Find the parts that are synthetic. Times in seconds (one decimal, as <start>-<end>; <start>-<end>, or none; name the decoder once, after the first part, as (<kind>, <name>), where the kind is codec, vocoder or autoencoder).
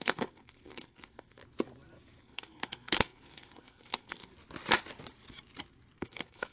0.0-1.4 (codec, SNAC); 2.2-4.3; 6.0-6.5